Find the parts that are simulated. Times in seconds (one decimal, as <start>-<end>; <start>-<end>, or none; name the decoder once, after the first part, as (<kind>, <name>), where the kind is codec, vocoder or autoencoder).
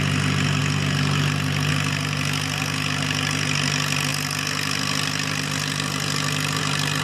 none